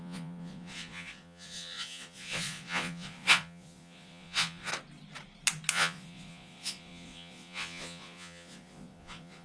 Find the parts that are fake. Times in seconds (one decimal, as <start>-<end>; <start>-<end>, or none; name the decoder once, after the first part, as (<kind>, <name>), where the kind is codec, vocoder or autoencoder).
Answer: 0.0-4.7 (vocoder, Vocos); 5.7-9.4